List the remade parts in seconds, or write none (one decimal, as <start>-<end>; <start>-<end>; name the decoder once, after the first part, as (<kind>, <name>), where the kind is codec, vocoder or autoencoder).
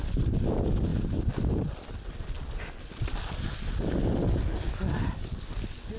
none